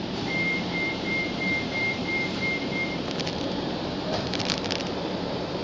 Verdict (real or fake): fake